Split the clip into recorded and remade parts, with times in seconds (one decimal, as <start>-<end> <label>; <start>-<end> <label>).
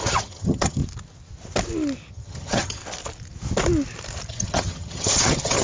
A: 0.0-0.8 remade; 0.8-2.1 recorded; 2.1-2.8 remade; 2.8-4.3 recorded; 4.3-5.6 remade